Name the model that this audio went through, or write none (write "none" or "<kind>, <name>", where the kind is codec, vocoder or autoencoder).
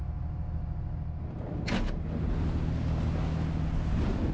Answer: none